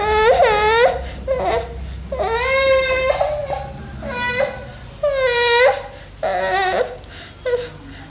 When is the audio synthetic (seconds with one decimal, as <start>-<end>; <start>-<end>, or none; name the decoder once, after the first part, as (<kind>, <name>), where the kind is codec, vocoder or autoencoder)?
none

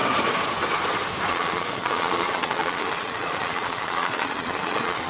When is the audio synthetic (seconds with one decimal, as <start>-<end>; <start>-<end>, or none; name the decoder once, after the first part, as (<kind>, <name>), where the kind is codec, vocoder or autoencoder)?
1.3-5.1 (vocoder, Vocos)

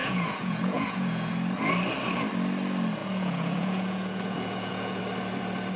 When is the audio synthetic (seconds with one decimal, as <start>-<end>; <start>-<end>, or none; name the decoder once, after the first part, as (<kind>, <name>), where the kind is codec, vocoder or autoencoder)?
0.0-1.3 (vocoder, Vocos); 3.0-5.0

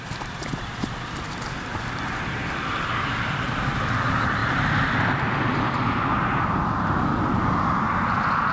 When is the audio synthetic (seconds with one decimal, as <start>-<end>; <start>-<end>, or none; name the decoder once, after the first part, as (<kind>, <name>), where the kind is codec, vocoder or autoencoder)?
none

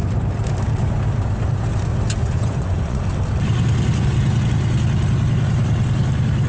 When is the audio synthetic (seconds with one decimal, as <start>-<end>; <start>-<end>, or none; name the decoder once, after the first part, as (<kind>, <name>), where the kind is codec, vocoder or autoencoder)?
2.2-3.0 (vocoder, Vocos)

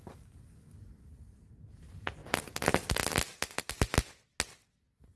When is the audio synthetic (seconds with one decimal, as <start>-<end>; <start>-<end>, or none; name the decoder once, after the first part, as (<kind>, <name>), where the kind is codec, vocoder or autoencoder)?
none

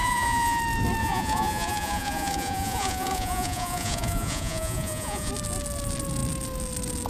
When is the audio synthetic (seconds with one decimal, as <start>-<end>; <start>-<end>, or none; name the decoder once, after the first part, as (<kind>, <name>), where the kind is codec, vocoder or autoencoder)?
0.0-0.6 (vocoder, Vocos); 1.0-5.3

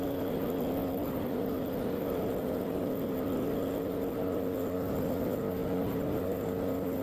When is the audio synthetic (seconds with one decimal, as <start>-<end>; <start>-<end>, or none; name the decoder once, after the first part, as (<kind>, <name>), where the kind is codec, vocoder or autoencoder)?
none